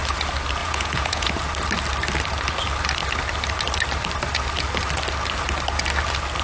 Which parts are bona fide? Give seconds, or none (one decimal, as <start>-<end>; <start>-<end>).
0.0-0.6; 1.3-6.4